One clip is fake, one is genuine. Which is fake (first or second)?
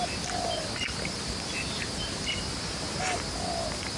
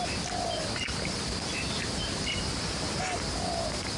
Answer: second